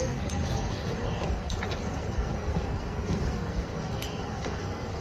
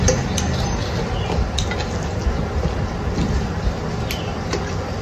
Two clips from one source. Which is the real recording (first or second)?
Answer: second